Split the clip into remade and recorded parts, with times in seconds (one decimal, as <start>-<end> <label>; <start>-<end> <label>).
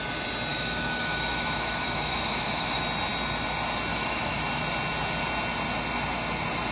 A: 0.0-0.5 recorded; 0.5-2.8 remade; 2.8-3.9 recorded; 3.9-4.4 remade; 4.4-6.7 recorded